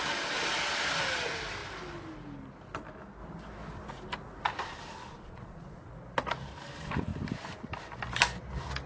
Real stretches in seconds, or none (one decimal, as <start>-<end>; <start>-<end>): 0.0-5.0; 5.9-8.9